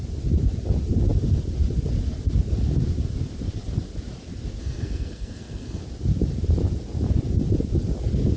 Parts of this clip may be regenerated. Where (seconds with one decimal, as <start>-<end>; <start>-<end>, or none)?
4.6-5.8